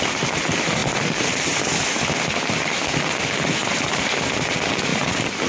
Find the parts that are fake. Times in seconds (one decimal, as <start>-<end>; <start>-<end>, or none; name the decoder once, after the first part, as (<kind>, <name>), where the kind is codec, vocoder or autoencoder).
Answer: 3.6-4.1 (vocoder, BigVGAN v2)